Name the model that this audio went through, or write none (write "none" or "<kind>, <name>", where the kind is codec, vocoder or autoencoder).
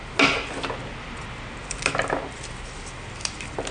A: none